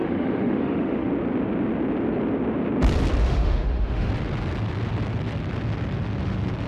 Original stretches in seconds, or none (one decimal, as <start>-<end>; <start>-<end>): 1.1-3.2; 4.1-6.7